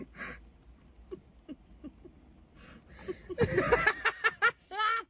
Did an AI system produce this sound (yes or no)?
no